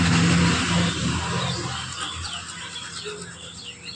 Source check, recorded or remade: recorded